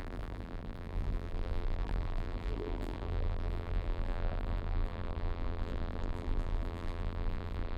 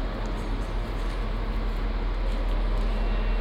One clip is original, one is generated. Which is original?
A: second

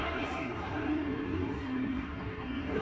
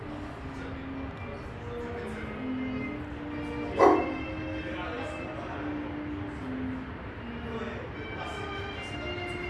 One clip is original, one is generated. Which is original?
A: second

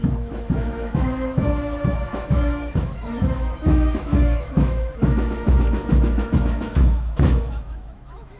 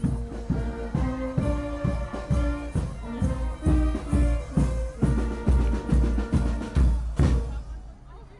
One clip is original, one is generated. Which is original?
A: second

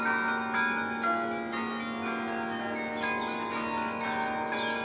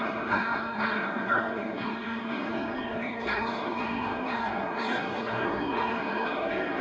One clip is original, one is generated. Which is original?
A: first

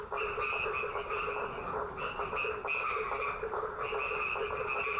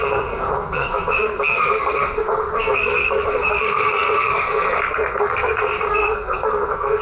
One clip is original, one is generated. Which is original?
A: first